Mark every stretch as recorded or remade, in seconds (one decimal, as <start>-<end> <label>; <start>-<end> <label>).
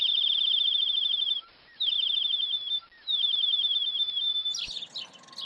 0.0-5.5 recorded